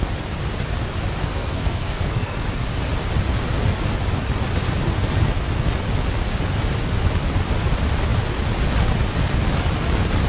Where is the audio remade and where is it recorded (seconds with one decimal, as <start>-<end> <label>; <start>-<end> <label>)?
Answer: 0.0-1.2 recorded; 1.2-2.4 remade; 2.4-10.3 recorded